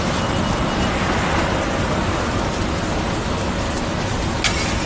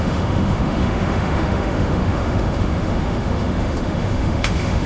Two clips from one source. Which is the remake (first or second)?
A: second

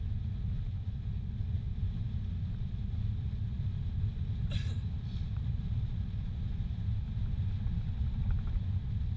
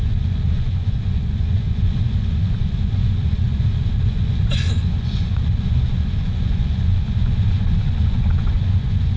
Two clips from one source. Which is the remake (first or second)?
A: second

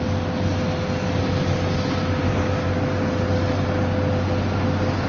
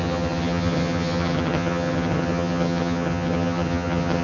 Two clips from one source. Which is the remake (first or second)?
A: second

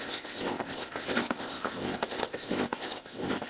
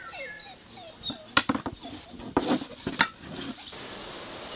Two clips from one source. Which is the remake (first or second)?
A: first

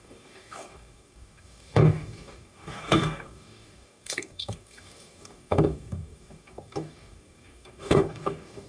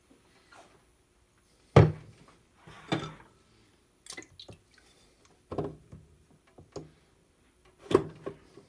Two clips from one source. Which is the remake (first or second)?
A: first